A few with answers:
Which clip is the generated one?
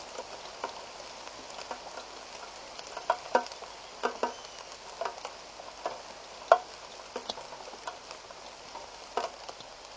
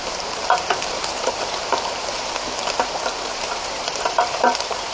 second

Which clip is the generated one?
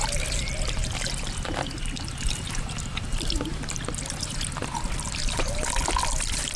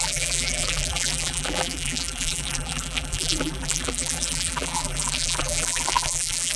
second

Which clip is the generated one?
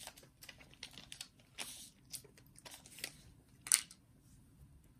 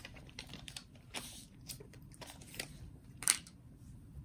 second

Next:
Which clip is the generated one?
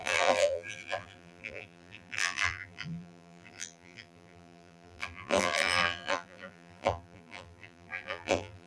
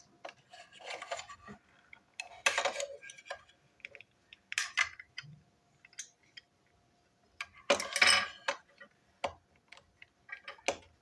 first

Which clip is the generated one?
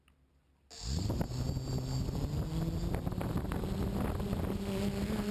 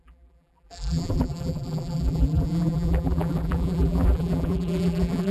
second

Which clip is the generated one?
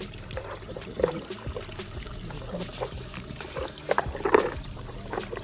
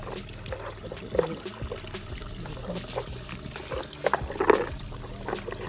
first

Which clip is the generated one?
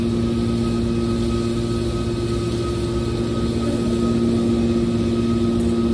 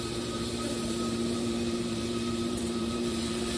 second